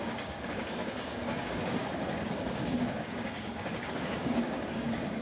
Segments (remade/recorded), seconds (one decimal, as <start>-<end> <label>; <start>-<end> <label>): 0.0-5.2 remade